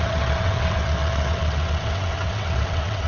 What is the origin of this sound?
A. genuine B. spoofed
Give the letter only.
B